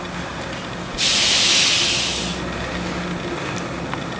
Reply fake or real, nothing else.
real